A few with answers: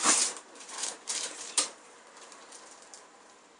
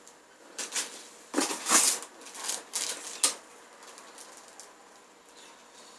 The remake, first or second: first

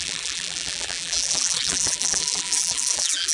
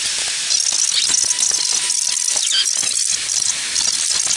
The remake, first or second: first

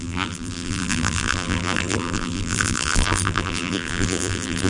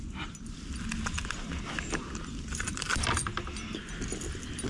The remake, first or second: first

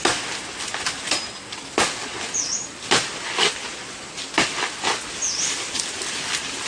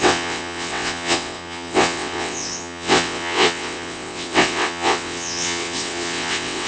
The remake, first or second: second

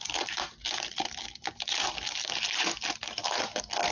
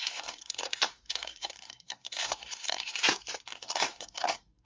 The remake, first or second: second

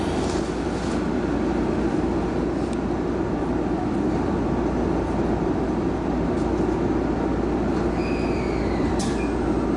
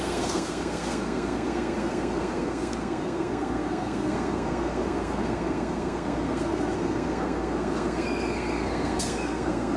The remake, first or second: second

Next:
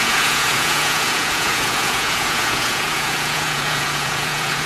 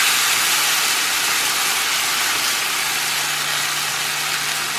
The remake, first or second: first